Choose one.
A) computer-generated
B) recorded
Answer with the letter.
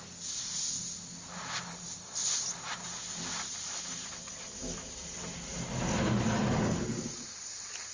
B